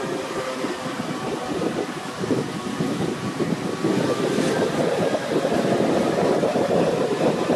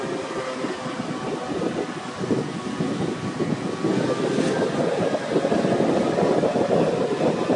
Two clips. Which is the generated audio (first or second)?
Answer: first